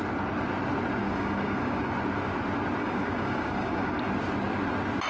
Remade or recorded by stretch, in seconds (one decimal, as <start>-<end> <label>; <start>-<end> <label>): 0.0-1.0 recorded; 1.0-1.9 remade; 1.9-2.8 recorded; 2.8-4.1 remade; 4.1-5.1 recorded